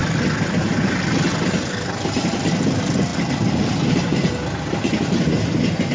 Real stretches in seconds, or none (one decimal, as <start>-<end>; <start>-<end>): 0.0-5.9